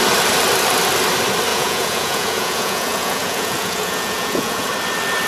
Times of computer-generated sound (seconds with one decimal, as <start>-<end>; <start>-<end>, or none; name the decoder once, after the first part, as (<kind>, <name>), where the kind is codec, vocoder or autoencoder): 1.5-4.7 (vocoder, Vocos)